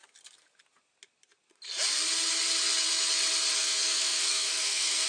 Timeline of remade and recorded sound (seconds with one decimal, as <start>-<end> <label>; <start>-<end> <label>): 0.0-3.5 recorded; 3.5-5.1 remade

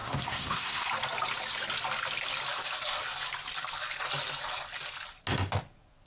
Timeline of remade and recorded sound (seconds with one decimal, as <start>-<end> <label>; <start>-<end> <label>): 0.0-0.9 remade; 0.9-6.1 recorded

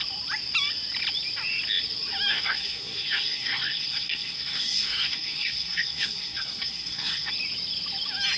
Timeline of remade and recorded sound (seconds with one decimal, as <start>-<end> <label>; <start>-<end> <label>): 0.0-2.3 recorded; 2.3-7.3 remade; 7.3-8.4 recorded

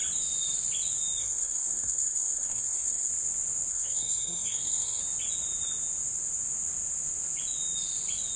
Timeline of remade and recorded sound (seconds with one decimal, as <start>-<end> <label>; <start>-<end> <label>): 0.0-1.2 recorded; 1.2-3.1 remade; 3.1-3.7 recorded; 3.7-5.0 remade; 5.0-8.4 recorded

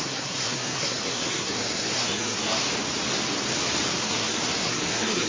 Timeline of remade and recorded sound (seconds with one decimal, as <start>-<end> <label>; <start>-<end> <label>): 0.0-2.6 remade; 2.6-4.0 recorded; 4.0-5.3 remade

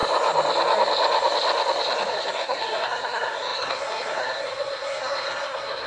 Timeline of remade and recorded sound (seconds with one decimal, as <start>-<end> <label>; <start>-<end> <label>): 0.0-2.1 recorded; 2.1-5.9 remade

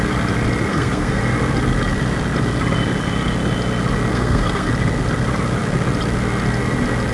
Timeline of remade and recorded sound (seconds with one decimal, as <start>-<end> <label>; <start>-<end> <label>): 0.0-0.7 recorded; 0.7-1.2 remade; 1.2-4.1 recorded; 4.1-4.7 remade; 4.7-7.1 recorded

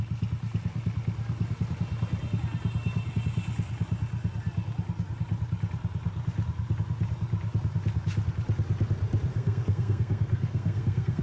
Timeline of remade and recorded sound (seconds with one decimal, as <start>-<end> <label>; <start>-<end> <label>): 0.0-9.3 recorded; 9.3-11.2 remade